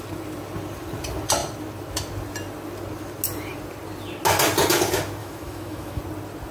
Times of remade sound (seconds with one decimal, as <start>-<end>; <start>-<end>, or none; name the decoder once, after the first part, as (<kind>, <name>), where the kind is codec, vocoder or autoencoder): 5.2-6.0 (autoencoder, DAC-VAE)